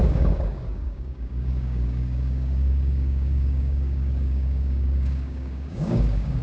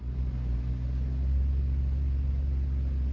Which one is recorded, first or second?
second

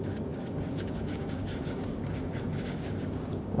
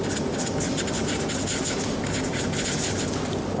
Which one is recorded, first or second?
second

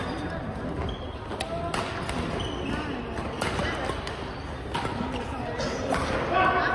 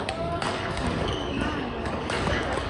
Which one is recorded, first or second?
first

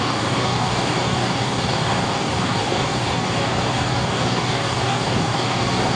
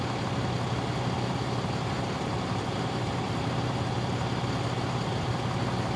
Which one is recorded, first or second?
second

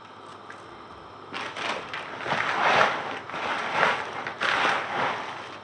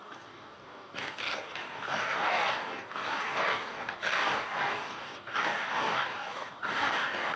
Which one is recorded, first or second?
first